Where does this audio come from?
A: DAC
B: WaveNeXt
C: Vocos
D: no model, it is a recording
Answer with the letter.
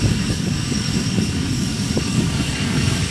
A